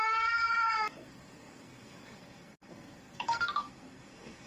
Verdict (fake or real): fake